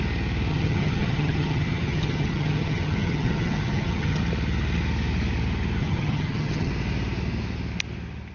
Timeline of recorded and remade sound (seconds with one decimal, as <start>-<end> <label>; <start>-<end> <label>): 0.0-0.5 recorded; 0.5-4.2 remade; 4.2-5.8 recorded; 5.8-6.7 remade; 6.7-8.3 recorded